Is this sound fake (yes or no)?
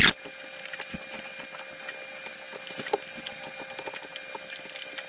no